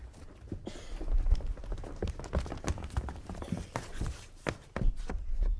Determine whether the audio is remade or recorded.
recorded